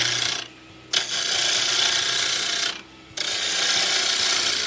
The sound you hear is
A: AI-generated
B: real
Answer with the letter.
B